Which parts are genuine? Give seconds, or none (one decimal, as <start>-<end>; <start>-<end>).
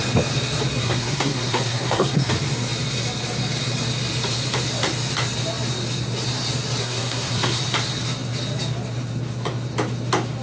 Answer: 0.0-0.8; 2.3-6.8; 7.6-10.4